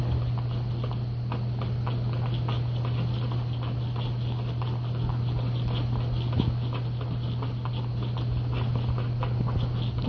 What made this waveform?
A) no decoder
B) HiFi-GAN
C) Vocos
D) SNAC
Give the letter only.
A